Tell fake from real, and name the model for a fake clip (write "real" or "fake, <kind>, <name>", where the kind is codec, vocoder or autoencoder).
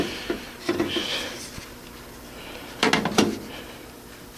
real